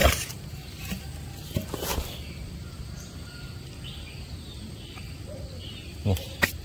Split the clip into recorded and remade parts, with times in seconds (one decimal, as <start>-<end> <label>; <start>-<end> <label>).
0.0-1.0 remade; 1.0-6.6 recorded